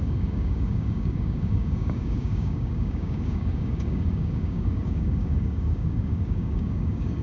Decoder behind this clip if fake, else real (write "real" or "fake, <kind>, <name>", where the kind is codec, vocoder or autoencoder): fake, codec, DAC